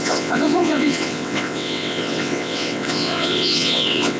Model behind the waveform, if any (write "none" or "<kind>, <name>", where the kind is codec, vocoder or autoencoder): vocoder, WaveNeXt